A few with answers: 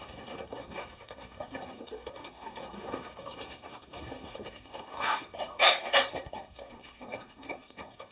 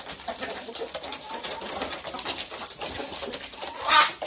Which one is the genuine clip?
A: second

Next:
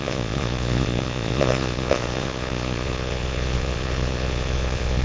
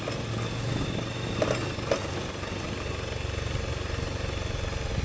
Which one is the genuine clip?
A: second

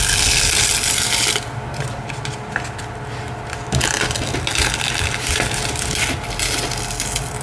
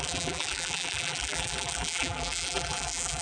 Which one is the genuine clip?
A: first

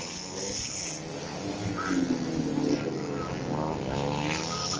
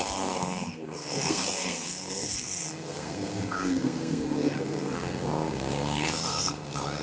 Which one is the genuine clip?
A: first